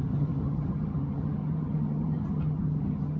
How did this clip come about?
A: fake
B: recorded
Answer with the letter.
A